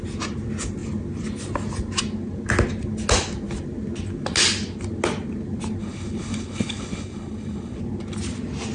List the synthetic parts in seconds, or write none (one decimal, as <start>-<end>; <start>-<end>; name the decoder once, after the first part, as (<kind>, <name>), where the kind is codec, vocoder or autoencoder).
5.8-7.8 (codec, HILCodec)